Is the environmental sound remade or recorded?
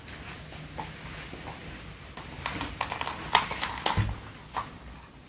recorded